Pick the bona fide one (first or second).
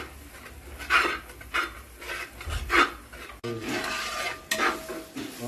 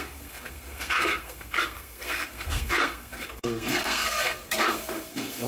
first